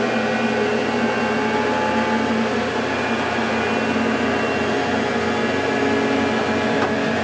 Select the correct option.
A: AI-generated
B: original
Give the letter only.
B